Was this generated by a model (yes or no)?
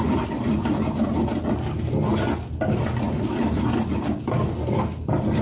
no